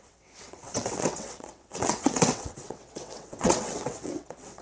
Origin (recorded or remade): remade